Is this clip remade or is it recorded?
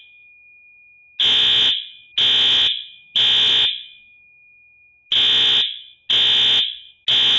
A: recorded